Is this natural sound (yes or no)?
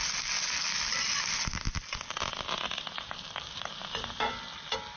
yes